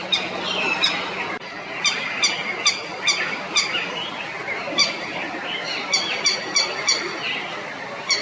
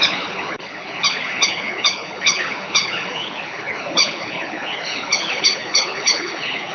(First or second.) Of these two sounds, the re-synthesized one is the second